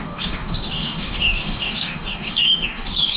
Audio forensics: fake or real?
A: fake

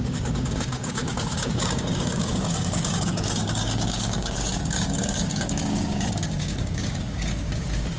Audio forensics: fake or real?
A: fake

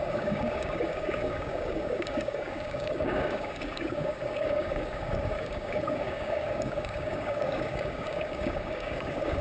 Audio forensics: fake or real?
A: fake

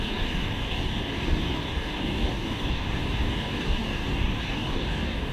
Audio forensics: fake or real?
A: fake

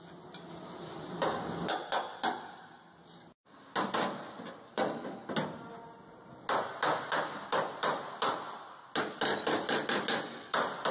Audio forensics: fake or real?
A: real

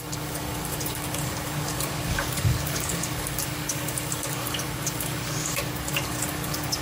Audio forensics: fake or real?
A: fake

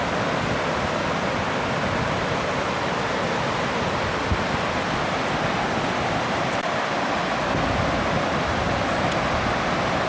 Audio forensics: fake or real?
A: real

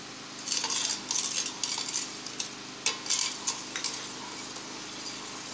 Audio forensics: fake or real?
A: real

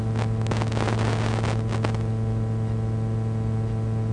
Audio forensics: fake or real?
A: real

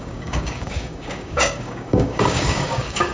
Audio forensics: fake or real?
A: fake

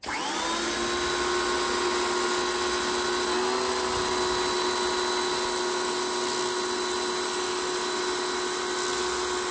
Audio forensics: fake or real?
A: real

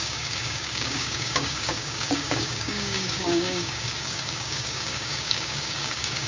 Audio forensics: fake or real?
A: fake